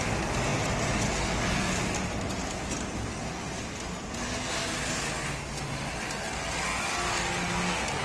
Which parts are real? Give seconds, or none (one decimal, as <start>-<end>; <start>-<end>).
0.0-8.0